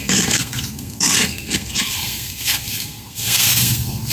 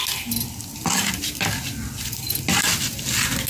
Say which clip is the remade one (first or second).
first